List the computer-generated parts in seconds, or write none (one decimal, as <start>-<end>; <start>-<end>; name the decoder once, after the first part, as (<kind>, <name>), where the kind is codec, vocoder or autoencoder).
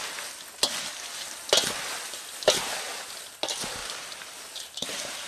3.8-5.3 (vocoder, BigVGAN v2)